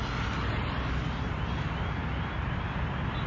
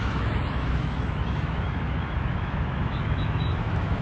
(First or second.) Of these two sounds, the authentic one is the first